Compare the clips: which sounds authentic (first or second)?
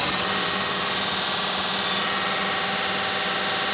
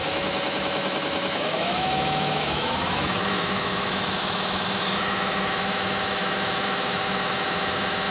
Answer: first